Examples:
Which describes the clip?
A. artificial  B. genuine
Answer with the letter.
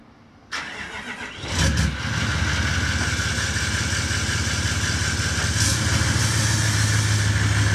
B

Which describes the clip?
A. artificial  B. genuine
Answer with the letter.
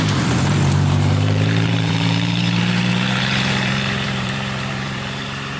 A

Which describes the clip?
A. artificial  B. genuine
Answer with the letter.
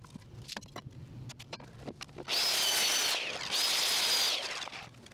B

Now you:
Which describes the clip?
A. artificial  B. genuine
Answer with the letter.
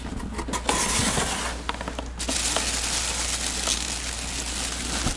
B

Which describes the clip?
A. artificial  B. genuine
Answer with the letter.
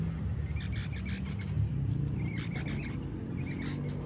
B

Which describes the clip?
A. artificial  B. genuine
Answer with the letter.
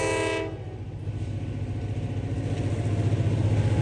B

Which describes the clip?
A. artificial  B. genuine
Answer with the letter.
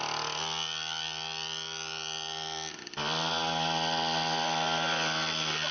B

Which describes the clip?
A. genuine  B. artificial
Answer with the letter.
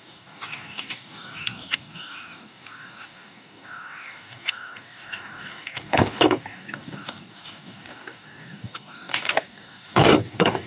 B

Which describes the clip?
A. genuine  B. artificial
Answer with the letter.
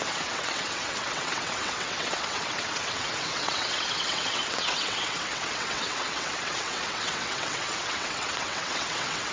B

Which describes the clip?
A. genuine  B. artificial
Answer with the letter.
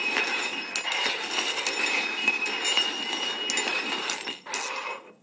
A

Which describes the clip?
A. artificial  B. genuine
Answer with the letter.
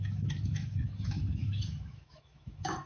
A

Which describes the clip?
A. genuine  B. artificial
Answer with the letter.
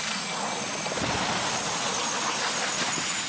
A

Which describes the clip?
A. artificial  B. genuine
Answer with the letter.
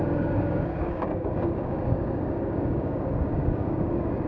A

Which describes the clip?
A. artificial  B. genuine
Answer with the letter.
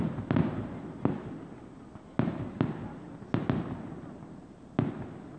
B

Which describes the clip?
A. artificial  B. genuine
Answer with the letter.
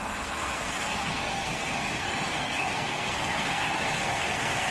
A